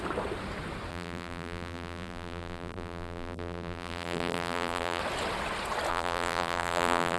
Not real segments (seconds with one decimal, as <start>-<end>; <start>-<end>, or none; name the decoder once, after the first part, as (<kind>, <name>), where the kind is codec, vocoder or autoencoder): 0.9-5.0 (vocoder, BigVGAN v2); 5.9-7.2